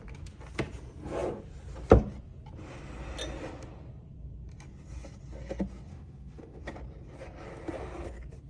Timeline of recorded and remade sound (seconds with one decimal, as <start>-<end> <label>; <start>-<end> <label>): 0.0-5.9 recorded; 5.9-6.6 remade; 6.6-8.5 recorded